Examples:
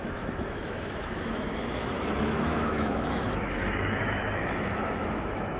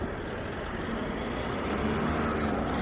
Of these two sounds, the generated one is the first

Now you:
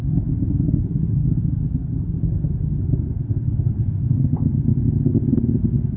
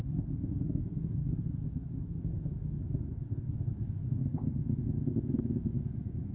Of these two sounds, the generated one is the second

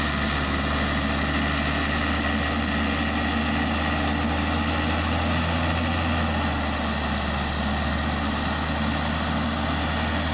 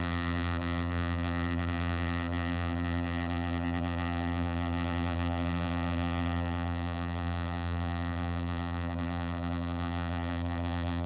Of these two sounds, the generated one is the second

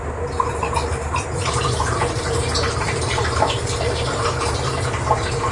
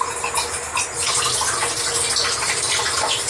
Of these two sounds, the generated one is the first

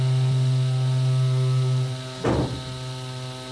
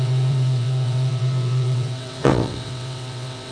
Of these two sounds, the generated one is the second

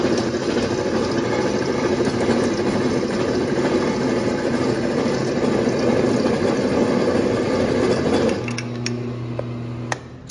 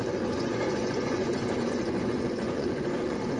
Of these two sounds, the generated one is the second